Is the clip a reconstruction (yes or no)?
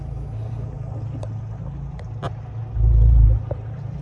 no